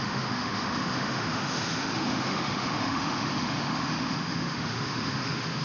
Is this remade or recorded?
remade